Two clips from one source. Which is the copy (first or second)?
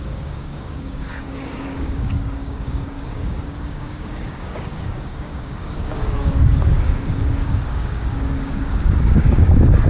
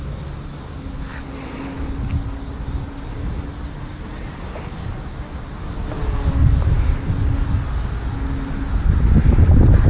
first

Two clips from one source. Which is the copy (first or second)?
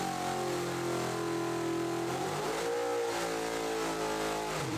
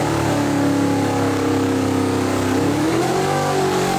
second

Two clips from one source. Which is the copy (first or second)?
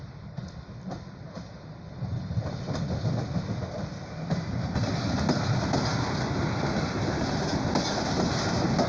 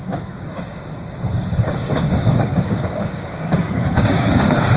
second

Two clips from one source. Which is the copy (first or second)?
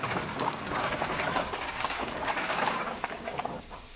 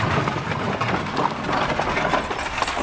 first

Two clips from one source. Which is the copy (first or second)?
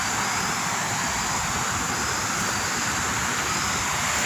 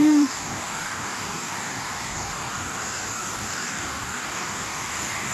second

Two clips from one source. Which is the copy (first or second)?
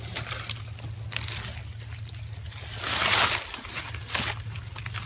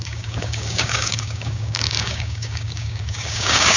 second